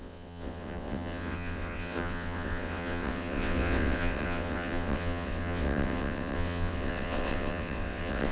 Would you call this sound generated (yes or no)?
yes